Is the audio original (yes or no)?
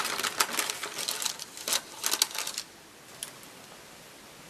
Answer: yes